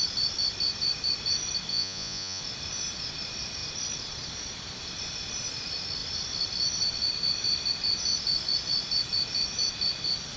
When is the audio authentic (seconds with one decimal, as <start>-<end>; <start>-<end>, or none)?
0.0-1.7; 2.4-10.4